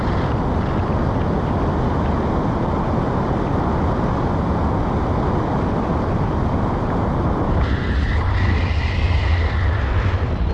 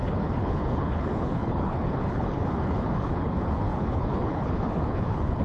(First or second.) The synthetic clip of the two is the second